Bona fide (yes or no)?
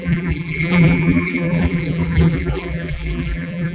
no